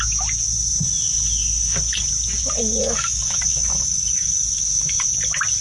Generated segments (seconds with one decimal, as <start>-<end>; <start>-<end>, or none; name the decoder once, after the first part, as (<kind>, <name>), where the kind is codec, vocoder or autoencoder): 2.8-5.1 (autoencoder, DAC-VAE)